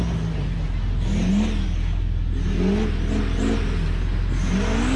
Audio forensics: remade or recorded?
recorded